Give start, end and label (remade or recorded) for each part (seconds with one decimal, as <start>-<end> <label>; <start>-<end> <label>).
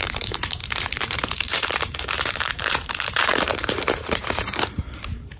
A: 0.0-5.4 remade